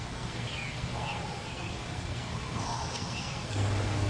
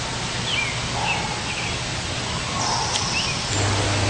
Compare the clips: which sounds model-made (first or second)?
first